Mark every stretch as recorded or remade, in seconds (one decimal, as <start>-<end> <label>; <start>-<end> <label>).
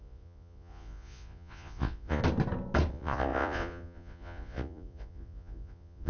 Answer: 0.0-2.2 remade; 2.2-2.9 recorded; 2.9-6.1 remade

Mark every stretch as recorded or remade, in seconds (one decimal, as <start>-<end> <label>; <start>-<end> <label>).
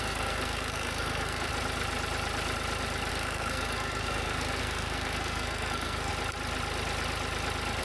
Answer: 0.0-1.5 remade; 1.5-3.1 recorded; 3.1-6.1 remade; 6.1-7.8 recorded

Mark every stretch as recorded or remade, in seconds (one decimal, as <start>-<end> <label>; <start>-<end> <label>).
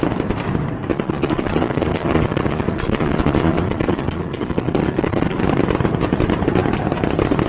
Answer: 0.0-0.9 recorded; 0.9-5.4 remade; 5.4-7.5 recorded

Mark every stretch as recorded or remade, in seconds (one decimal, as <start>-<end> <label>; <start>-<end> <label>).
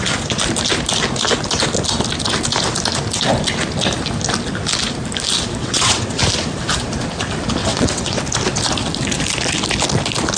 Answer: 0.0-5.6 recorded; 5.6-6.2 remade; 6.2-7.6 recorded; 7.6-8.2 remade; 8.2-10.4 recorded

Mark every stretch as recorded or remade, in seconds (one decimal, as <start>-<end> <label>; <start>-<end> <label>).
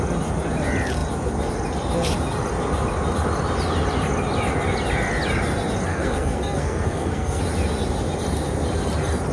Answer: 0.0-5.9 recorded; 5.9-7.4 remade; 7.4-9.3 recorded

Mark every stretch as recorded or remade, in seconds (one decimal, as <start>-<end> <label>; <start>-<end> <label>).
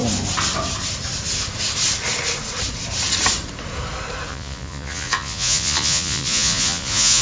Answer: 0.0-4.3 recorded; 4.3-7.2 remade